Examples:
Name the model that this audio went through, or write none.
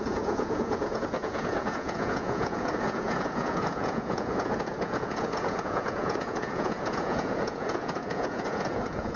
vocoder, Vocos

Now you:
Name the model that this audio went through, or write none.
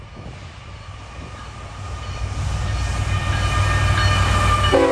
none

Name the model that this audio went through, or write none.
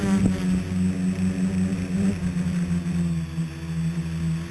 none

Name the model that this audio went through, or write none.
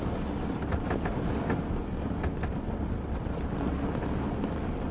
none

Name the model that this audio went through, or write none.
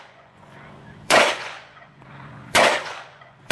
vocoder, Vocos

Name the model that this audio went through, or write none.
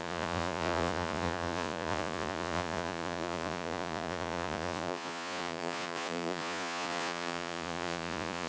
vocoder, Vocos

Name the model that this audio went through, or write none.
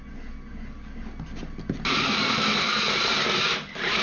none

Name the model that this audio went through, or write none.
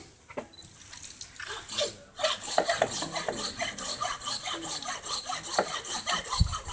none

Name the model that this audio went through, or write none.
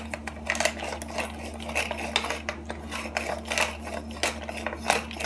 none